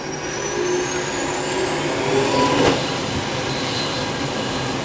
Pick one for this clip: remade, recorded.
recorded